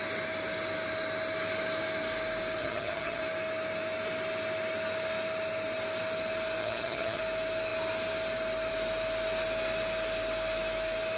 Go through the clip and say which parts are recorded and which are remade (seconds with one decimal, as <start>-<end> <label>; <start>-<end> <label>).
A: 0.0-2.6 recorded; 2.6-3.2 remade; 3.2-6.6 recorded; 6.6-7.2 remade; 7.2-11.2 recorded

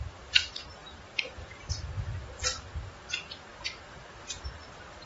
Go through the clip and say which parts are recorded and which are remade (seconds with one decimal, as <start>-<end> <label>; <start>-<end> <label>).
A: 0.0-3.5 recorded; 3.5-5.1 remade

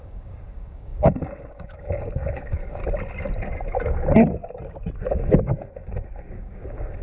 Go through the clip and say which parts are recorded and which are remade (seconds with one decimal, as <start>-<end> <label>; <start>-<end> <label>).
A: 0.0-2.8 remade; 2.8-5.1 recorded; 5.1-7.0 remade

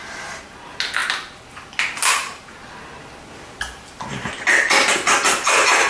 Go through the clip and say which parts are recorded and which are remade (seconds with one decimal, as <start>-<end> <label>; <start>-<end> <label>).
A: 0.0-5.9 recorded

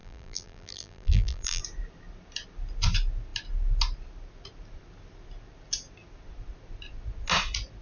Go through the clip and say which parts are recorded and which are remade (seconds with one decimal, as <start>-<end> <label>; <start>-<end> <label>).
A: 0.0-1.6 remade; 1.6-7.8 recorded

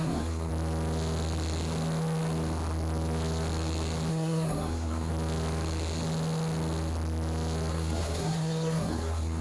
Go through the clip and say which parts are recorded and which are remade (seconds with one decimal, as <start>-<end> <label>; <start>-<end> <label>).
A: 0.0-0.5 remade; 0.5-4.1 recorded; 4.1-5.1 remade; 5.1-7.7 recorded; 7.7-9.4 remade

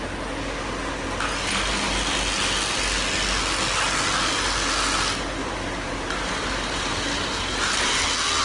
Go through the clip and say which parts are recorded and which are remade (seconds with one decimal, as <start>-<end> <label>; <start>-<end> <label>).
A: 0.0-5.4 recorded; 5.4-8.0 remade; 8.0-8.4 recorded